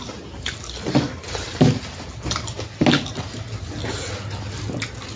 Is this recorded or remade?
recorded